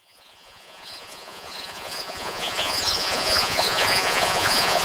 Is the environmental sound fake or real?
fake